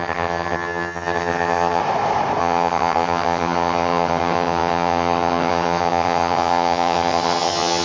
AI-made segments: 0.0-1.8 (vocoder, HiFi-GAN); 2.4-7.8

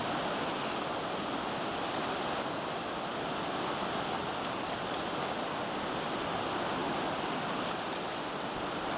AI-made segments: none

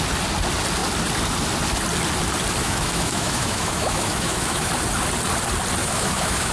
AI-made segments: 2.6-4.7 (autoencoder, DAC-VAE); 5.8-6.5